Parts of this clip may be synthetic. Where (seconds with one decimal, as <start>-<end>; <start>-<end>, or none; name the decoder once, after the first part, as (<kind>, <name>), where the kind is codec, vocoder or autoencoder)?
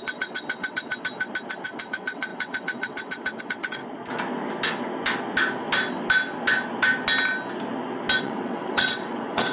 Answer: 0.0-0.9 (vocoder, WaveNeXt); 1.8-3.8; 8.2-9.5